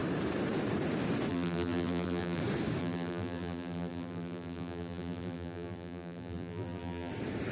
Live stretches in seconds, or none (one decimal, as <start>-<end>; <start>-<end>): 0.0-1.3; 2.4-2.8; 7.1-7.5